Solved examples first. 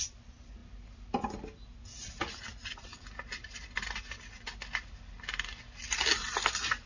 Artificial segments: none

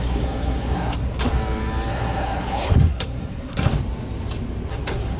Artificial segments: 0.0-1.0 (codec, SNAC); 1.9-3.7; 4.7-5.2

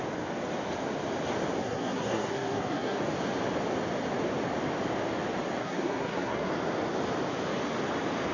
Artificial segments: 1.6-3.0 (codec, SNAC); 5.6-6.5